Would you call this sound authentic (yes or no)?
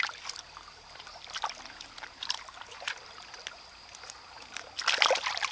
yes